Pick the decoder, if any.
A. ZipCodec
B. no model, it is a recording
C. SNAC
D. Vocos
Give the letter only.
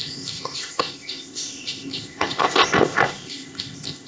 A